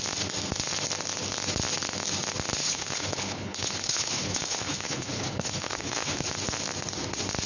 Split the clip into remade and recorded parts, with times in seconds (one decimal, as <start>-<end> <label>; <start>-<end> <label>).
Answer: 0.0-2.6 recorded; 2.6-6.3 remade; 6.3-7.5 recorded